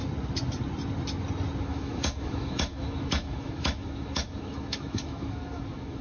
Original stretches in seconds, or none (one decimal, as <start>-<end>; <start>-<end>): 0.0-1.6